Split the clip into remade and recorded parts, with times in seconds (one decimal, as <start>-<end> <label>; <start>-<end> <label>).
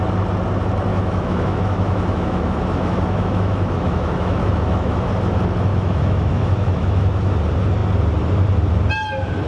0.0-0.9 recorded; 0.9-5.1 remade; 5.1-5.7 recorded; 5.7-7.3 remade; 7.3-9.5 recorded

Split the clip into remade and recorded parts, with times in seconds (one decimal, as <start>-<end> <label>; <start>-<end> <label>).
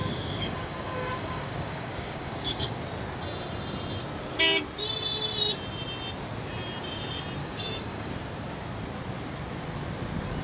0.0-2.8 remade; 2.8-7.4 recorded; 7.4-8.1 remade; 8.1-10.4 recorded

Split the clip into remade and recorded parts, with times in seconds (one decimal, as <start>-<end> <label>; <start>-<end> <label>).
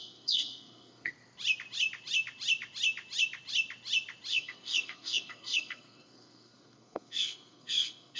0.0-1.1 remade; 1.1-4.3 recorded; 4.3-8.2 remade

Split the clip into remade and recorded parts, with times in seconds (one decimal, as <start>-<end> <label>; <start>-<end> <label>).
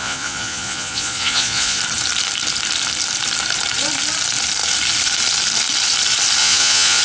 0.0-1.8 remade; 1.8-6.4 recorded; 6.4-7.0 remade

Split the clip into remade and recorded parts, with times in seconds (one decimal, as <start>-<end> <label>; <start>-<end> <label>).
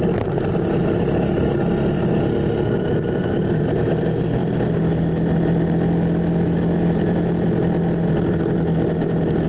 0.0-9.5 recorded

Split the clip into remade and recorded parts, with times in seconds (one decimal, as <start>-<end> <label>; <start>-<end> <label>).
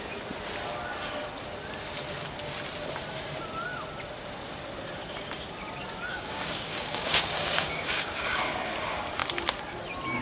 0.0-6.1 recorded; 6.1-8.4 remade; 8.4-10.2 recorded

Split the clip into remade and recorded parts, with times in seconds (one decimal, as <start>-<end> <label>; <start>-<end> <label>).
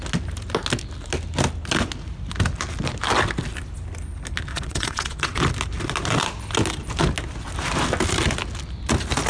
0.0-4.5 recorded; 4.5-5.4 remade; 5.4-9.3 recorded